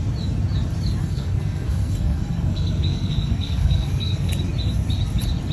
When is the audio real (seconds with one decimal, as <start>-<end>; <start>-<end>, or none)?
0.0-1.0; 4.3-5.5